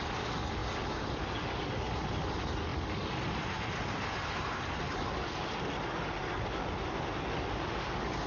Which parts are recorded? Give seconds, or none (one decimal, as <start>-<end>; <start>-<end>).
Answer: 0.0-0.6; 1.2-8.3